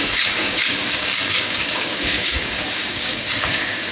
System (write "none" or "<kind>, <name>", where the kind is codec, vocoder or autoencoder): codec, DAC